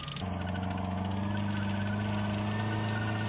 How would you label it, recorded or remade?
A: recorded